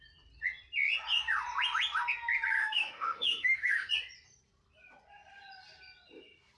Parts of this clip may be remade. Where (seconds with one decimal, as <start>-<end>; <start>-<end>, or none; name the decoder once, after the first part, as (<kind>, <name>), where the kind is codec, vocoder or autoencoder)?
2.6-3.9 (autoencoder, DAC-VAE)